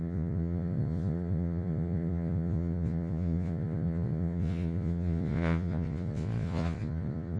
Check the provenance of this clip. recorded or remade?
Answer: remade